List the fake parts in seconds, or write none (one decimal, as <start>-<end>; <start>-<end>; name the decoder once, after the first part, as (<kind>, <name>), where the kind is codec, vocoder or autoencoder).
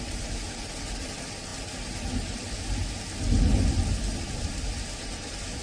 none